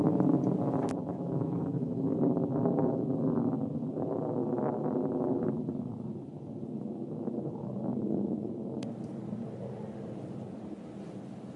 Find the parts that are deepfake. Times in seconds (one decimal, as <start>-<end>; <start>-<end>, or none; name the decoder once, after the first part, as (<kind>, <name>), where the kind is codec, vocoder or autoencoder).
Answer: 1.1-2.2 (autoencoder, DAC-VAE)

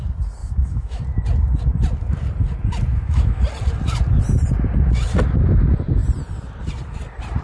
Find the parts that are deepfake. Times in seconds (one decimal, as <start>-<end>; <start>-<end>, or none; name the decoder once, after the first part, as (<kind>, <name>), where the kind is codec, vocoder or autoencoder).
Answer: 0.4-1.0 (autoencoder, DAC-VAE); 2.9-3.4

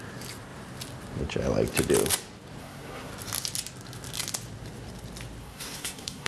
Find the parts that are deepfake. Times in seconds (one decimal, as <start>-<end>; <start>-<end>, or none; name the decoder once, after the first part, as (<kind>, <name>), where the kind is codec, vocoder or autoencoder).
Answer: 2.6-3.1 (codec, SNAC); 5.4-6.3

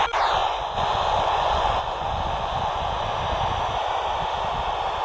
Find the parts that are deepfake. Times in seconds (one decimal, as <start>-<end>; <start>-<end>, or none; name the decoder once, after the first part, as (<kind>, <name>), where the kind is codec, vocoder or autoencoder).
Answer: 0.4-3.2 (vocoder, Vocos)

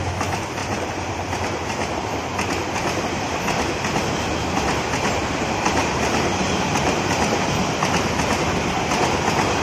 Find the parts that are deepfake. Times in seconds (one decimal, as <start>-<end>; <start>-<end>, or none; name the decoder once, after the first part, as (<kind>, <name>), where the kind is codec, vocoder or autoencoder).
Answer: 0.6-2.0 (vocoder, BigVGAN v2); 5.8-7.1